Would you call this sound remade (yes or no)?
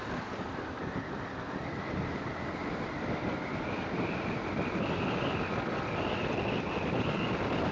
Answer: no